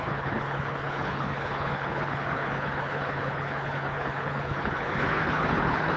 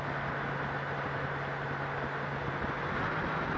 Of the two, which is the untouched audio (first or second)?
second